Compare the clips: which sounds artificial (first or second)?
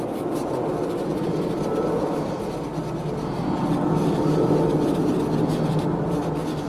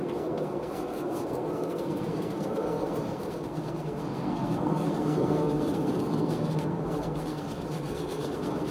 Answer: second